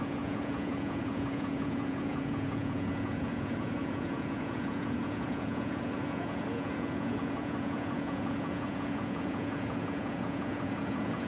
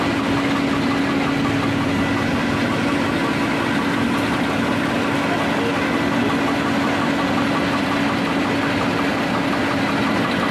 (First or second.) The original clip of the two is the second